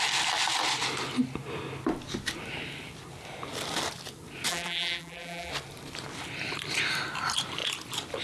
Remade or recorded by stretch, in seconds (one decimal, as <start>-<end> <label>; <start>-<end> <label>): 0.0-4.5 recorded; 4.5-5.5 remade; 5.5-8.2 recorded